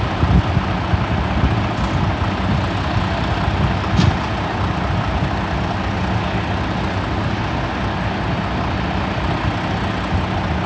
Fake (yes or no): no